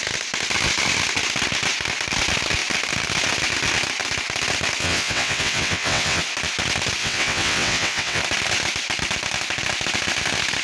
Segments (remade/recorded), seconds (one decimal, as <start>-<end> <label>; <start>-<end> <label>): 0.0-4.8 recorded; 4.8-6.2 remade; 6.2-7.0 recorded; 7.0-8.2 remade; 8.2-10.6 recorded